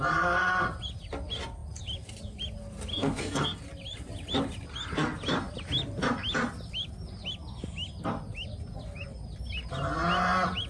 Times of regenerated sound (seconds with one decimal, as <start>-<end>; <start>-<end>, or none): 2.9-3.6